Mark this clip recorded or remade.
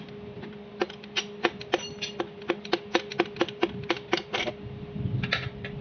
recorded